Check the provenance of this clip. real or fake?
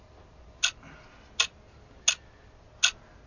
real